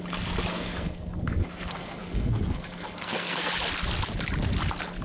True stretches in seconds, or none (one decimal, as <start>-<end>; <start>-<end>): 0.0-0.5; 3.5-5.0